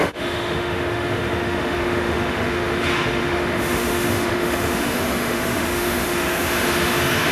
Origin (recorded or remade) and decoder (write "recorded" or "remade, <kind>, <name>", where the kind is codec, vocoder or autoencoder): remade, autoencoder, DAC-VAE